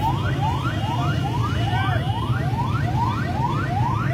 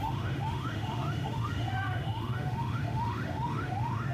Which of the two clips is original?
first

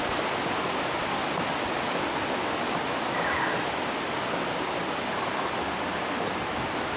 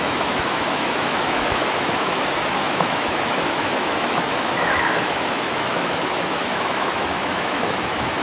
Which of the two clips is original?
first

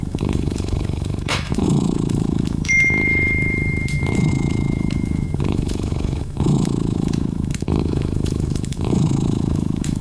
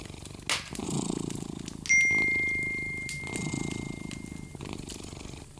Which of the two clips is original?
second